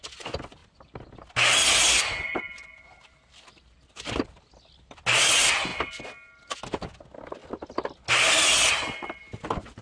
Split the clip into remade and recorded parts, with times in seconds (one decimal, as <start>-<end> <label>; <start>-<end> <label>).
0.0-9.8 recorded